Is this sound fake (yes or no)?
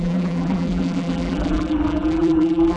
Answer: yes